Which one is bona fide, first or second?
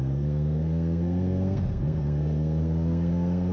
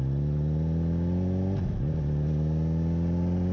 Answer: second